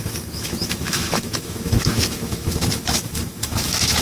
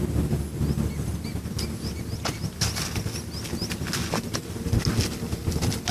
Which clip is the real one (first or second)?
second